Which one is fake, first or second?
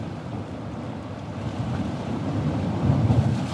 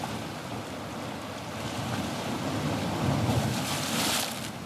first